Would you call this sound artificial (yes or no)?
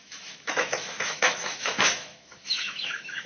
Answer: yes